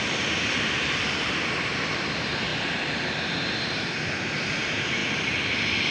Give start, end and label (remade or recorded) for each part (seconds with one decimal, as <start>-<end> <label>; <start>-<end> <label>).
0.0-2.5 remade; 2.5-3.0 recorded; 3.0-5.0 remade; 5.0-5.9 recorded